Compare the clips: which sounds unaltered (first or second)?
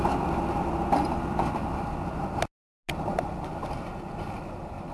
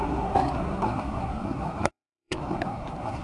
first